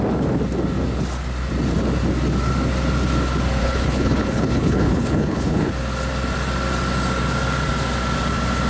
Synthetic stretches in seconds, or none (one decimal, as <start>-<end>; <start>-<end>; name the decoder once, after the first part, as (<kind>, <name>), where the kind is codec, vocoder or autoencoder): 3.6-5.7 (codec, HILCodec)